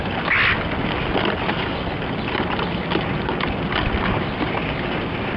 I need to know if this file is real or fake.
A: real